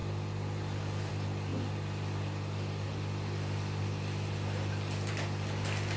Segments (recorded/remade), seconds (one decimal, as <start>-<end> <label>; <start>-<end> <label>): 0.0-6.0 recorded